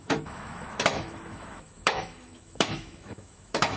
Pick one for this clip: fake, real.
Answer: fake